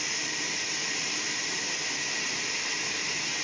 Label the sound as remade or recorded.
recorded